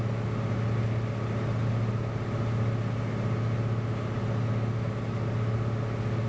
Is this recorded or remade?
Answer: recorded